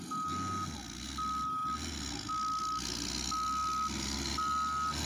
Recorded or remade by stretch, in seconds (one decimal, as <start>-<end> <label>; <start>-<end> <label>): 0.0-5.1 recorded